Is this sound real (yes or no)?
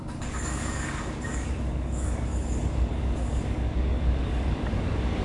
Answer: no